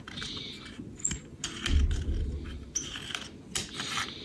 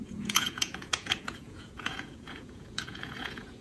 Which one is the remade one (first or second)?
second